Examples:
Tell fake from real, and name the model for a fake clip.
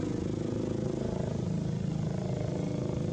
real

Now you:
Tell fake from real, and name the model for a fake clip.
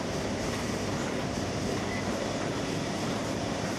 fake, vocoder, BigVGAN v2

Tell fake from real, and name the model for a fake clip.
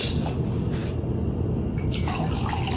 real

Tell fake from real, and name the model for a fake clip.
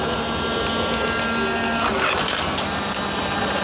real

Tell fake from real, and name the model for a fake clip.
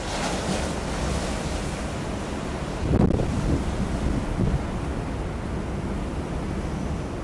real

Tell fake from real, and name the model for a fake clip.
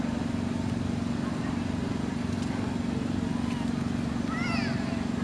real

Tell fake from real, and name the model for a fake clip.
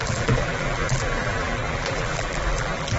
fake, vocoder, BigVGAN v2